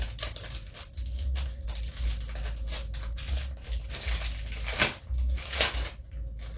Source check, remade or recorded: recorded